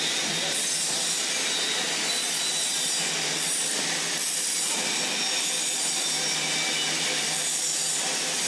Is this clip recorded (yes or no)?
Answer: yes